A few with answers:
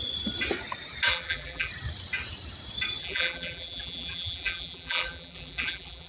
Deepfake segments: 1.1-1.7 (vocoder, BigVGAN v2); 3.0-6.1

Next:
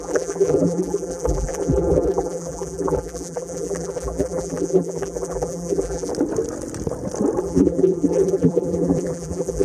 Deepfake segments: 0.0-6.1 (vocoder, BigVGAN v2); 7.4-9.6

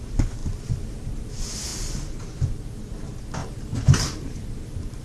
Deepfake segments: 3.4-4.5 (vocoder, BigVGAN v2)

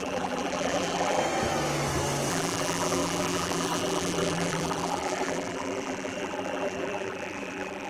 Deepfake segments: 0.0-1.2 (vocoder, BigVGAN v2); 2.3-7.9

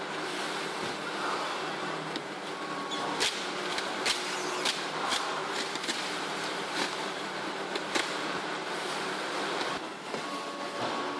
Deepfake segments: 5.1-9.7 (vocoder, BigVGAN v2)

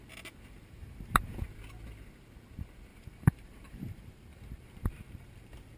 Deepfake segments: 0.8-1.4 (vocoder, BigVGAN v2); 2.9-5.8